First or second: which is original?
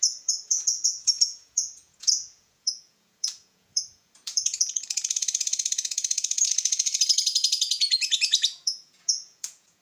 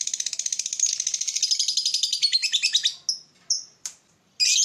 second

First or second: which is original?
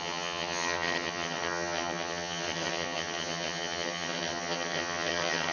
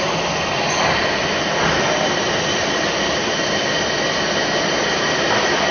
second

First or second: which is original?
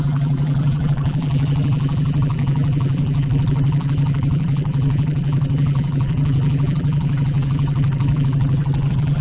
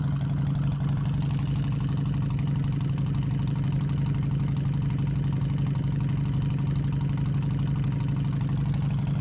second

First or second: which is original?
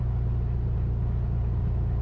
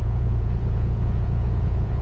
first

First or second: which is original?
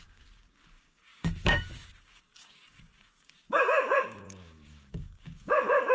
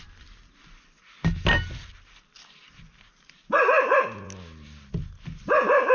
second